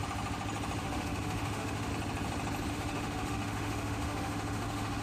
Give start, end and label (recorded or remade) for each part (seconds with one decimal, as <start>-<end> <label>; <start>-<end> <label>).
0.0-0.8 recorded; 0.8-1.9 remade; 1.9-2.7 recorded; 2.7-5.0 remade